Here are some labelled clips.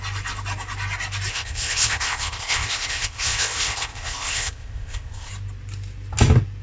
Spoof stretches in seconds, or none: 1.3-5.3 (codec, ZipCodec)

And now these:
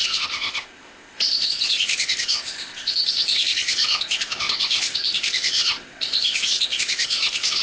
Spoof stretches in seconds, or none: 0.0-7.6 (codec, ZipCodec)